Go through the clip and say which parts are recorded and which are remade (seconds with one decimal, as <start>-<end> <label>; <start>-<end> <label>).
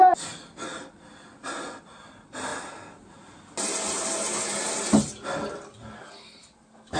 0.0-7.0 recorded